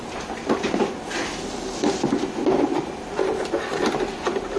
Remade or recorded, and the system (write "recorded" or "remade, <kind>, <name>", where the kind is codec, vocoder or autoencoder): recorded